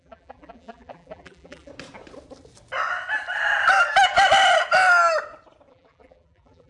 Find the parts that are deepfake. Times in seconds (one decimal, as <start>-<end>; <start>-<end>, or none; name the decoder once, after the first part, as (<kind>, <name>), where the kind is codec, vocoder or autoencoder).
0.0-1.7 (vocoder, BigVGAN v2); 5.7-6.7